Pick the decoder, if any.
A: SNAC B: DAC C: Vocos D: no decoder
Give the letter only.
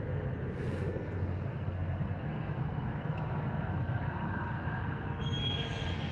A